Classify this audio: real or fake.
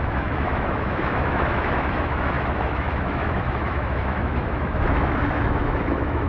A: fake